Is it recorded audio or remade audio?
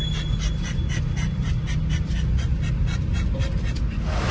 recorded